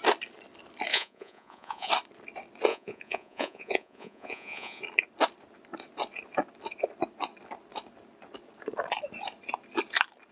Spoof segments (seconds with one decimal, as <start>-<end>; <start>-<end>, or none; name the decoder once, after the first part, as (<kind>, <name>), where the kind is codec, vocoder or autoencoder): 0.9-1.9 (vocoder, Vocos); 2.7-4.8